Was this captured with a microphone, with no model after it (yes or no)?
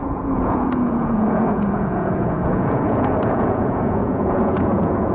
no